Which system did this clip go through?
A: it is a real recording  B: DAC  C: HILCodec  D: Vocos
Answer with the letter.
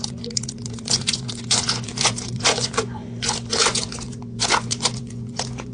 D